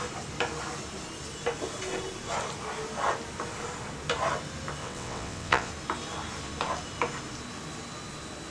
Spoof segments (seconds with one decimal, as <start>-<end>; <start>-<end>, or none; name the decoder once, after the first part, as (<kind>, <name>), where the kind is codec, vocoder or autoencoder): 4.8-5.7 (vocoder, WaveNeXt)